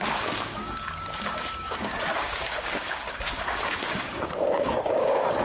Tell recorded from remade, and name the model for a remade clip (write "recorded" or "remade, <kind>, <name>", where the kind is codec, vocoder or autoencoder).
remade, codec, DAC